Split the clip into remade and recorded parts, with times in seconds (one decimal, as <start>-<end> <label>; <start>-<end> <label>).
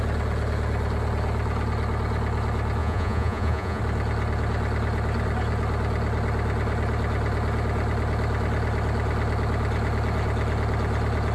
0.0-2.8 recorded; 2.8-3.8 remade; 3.8-11.3 recorded